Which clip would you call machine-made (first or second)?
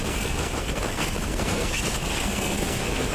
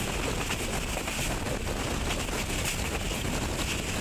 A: first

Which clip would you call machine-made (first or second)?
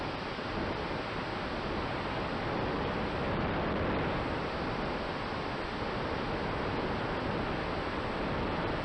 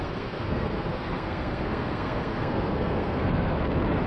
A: second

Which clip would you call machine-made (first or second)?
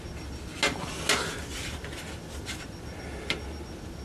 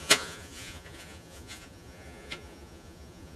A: second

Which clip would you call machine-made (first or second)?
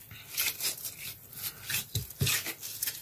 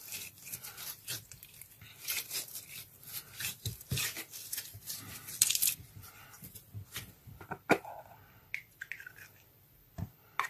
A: second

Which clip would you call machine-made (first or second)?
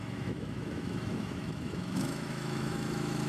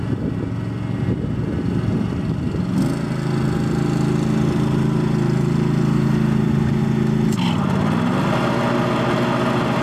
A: first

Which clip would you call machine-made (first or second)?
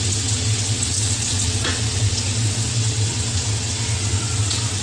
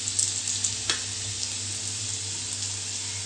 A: first